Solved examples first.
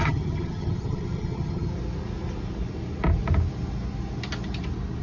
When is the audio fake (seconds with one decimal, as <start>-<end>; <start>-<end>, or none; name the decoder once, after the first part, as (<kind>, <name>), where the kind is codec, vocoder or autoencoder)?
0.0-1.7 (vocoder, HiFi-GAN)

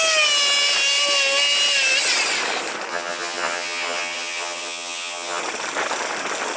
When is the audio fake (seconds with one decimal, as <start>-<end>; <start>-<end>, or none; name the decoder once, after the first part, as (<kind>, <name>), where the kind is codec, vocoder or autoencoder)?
2.9-5.4 (vocoder, HiFi-GAN)

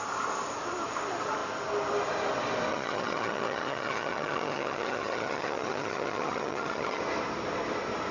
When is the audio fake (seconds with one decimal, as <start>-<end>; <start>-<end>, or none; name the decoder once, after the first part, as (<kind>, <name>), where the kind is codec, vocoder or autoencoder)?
2.7-7.0 (vocoder, HiFi-GAN)

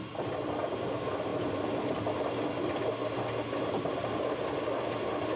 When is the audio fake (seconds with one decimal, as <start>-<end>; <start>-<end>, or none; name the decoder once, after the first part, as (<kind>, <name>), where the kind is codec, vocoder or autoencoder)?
none

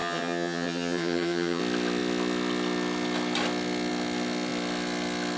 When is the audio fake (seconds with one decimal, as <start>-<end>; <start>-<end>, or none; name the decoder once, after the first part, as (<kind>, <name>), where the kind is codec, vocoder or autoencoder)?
0.0-1.6 (vocoder, HiFi-GAN)

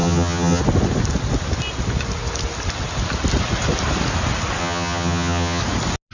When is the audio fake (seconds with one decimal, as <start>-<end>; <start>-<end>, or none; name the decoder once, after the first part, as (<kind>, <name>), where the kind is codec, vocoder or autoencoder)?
0.0-0.6 (vocoder, HiFi-GAN); 4.6-5.6